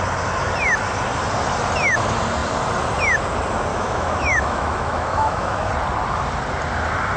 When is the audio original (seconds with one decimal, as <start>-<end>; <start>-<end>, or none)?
0.0-3.7; 5.7-7.2